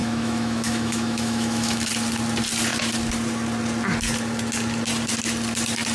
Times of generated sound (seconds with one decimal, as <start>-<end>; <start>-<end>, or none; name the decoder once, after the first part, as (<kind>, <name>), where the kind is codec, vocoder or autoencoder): 0.0-1.9 (autoencoder, DAC-VAE)